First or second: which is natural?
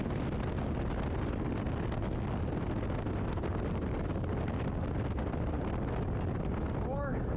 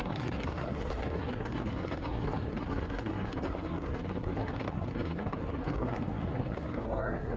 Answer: first